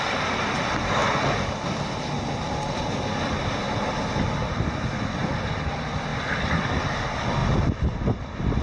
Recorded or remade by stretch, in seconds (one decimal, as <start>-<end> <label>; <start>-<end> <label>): 0.0-6.1 recorded; 6.1-6.9 remade; 6.9-8.6 recorded